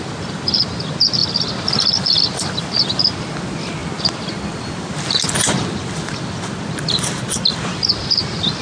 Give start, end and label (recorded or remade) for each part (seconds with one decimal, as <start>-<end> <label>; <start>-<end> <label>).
0.0-8.6 recorded